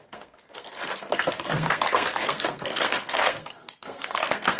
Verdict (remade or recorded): remade